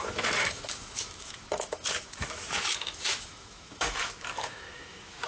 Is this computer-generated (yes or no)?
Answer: yes